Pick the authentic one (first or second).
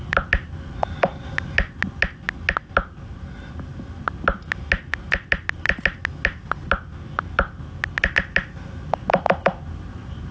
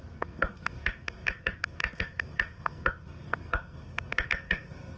first